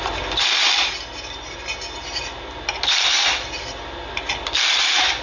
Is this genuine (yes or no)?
yes